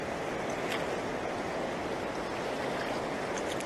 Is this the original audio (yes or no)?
yes